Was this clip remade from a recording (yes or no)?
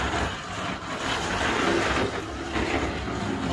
no